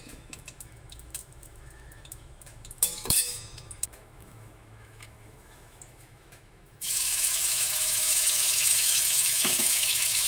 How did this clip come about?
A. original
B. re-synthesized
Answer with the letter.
B